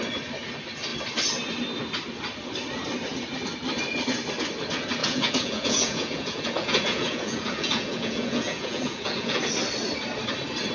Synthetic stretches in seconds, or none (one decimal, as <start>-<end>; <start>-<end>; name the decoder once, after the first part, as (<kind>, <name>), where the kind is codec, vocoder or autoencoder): 5.0-9.4 (vocoder, Vocos)